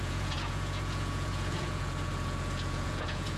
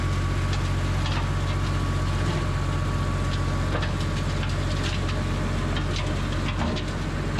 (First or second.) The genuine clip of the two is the second